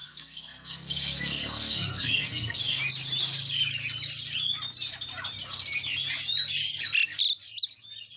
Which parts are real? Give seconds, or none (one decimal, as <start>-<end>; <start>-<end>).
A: 2.8-8.2